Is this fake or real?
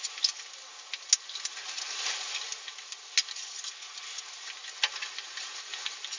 real